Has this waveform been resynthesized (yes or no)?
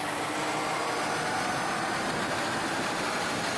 no